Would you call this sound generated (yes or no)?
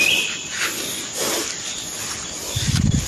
no